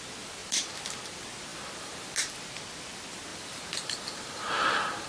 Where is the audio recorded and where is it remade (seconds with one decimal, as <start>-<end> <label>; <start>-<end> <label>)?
0.0-1.5 recorded; 1.5-2.1 remade; 2.1-3.3 recorded; 3.3-5.1 remade